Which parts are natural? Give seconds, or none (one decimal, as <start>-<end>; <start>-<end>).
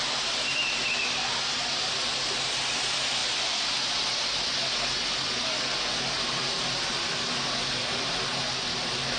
0.0-9.2